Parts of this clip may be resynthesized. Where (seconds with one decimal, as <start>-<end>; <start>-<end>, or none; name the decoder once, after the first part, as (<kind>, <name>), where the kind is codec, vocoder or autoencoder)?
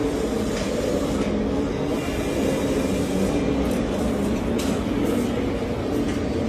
0.0-2.1 (vocoder, BigVGAN v2)